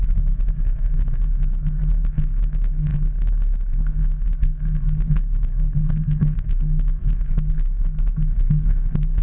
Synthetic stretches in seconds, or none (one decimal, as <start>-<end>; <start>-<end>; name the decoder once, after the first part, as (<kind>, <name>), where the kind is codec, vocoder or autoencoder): 0.0-9.2 (codec, SNAC)